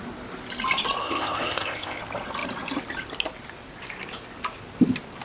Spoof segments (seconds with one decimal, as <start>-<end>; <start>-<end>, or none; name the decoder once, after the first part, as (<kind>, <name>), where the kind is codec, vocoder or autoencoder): 1.0-2.0 (codec, ZipCodec)